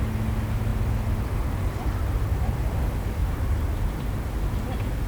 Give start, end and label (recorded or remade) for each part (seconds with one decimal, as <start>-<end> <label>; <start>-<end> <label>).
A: 0.0-0.7 recorded; 0.7-2.1 remade; 2.1-3.2 recorded; 3.2-4.0 remade; 4.0-5.1 recorded